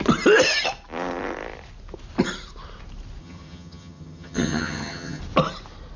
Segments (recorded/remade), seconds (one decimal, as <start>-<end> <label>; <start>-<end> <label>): 0.0-3.2 recorded; 3.2-5.2 remade; 5.2-6.0 recorded